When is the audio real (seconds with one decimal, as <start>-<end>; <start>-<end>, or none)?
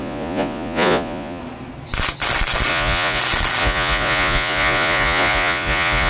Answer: 1.4-2.7; 3.2-3.6